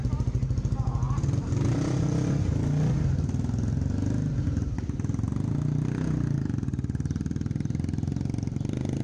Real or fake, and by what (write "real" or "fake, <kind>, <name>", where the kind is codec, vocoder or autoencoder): real